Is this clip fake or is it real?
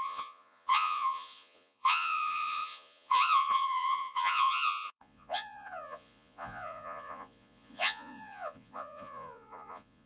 fake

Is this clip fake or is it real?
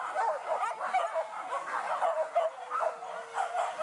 real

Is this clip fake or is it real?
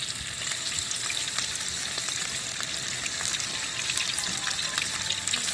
fake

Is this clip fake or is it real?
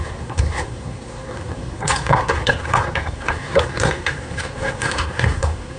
fake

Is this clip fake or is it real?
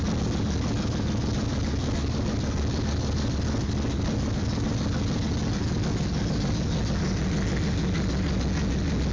real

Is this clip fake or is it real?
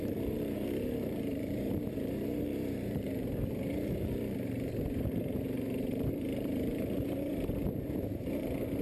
fake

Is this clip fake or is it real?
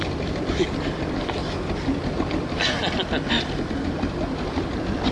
real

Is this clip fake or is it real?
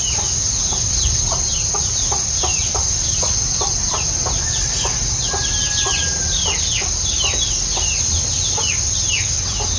real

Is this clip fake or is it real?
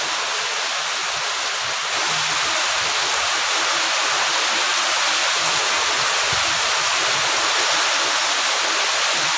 real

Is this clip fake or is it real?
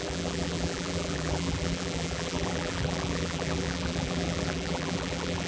fake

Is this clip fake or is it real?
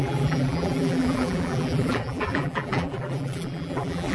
fake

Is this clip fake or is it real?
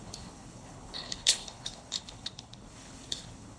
fake